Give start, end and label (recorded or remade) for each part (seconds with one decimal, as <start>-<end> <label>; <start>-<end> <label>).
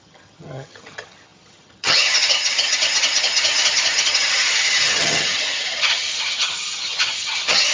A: 0.0-7.7 remade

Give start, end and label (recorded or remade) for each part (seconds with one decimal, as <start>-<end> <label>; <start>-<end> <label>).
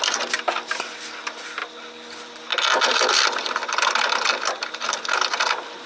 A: 0.0-5.9 recorded